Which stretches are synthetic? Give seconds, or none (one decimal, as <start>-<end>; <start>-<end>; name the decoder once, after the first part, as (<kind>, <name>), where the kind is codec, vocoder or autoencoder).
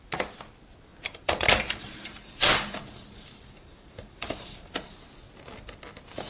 0.9-4.7 (vocoder, BigVGAN v2)